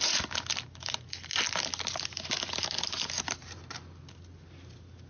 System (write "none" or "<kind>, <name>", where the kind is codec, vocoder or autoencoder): none